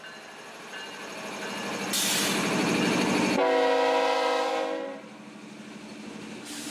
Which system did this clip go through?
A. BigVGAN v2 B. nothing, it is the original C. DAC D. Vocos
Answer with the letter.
B